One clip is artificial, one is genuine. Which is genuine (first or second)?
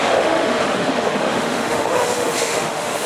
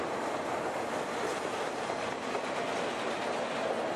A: second